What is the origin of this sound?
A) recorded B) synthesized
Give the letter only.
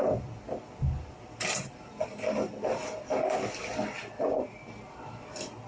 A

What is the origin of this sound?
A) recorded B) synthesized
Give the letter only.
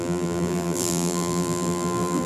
B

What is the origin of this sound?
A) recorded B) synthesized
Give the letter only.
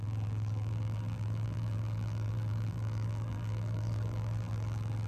B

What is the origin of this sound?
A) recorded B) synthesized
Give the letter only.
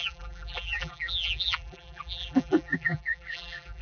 B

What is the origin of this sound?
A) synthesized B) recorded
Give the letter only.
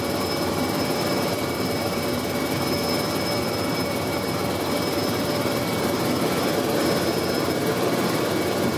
A